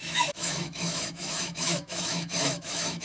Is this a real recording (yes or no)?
no